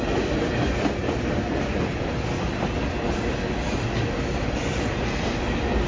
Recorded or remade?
recorded